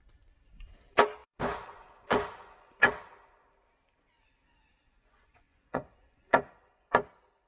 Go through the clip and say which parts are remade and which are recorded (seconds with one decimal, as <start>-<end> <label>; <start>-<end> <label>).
0.0-1.2 recorded; 1.2-2.7 remade; 2.7-4.8 recorded; 4.8-6.9 remade; 6.9-7.5 recorded